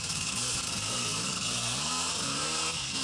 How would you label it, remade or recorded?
remade